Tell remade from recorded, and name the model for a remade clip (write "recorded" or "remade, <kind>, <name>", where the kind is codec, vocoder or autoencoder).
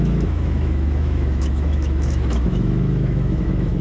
remade, autoencoder, DAC-VAE